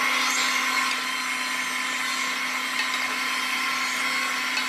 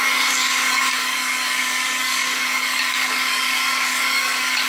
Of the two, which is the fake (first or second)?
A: second